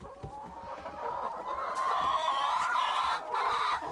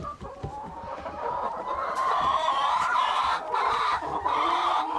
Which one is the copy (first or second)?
second